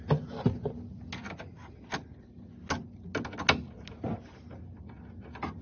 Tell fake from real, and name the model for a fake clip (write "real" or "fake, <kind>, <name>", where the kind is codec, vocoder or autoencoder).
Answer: real